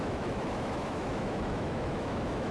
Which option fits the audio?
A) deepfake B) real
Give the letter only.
A